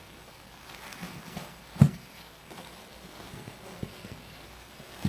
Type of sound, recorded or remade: remade